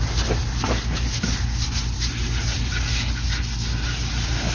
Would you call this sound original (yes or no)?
yes